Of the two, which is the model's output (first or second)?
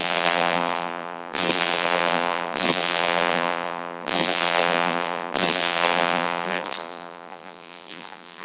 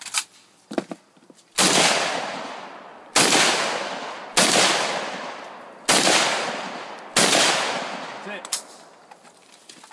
first